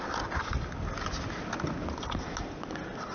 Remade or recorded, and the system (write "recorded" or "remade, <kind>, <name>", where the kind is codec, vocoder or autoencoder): recorded